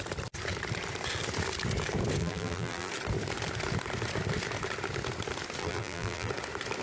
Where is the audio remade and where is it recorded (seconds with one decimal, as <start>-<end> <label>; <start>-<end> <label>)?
0.0-2.2 recorded; 2.2-2.9 remade; 2.9-5.6 recorded; 5.6-6.3 remade; 6.3-6.8 recorded